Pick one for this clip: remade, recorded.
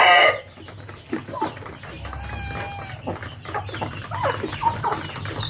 recorded